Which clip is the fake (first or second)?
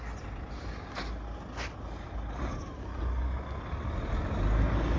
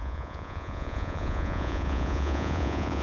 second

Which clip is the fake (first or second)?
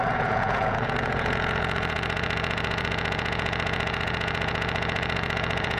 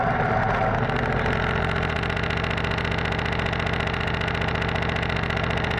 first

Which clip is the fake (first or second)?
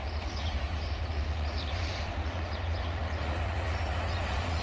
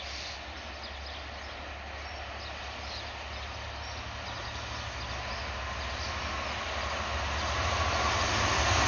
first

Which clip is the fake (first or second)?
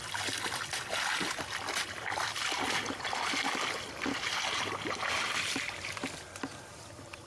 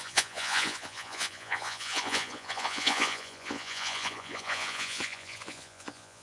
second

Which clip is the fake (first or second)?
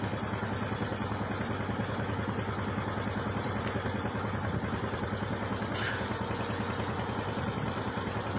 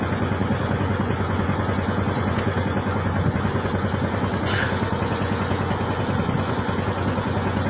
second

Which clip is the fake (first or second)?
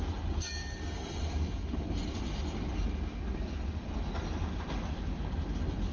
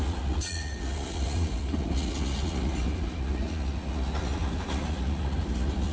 second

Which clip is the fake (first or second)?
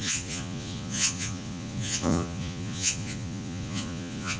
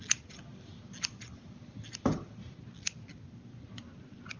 first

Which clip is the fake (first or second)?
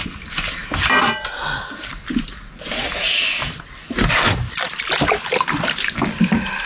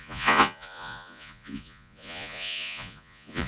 second